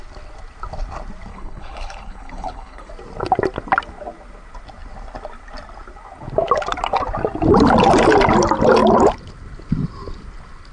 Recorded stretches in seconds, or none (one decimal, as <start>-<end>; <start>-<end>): 0.0-1.3; 2.9-10.7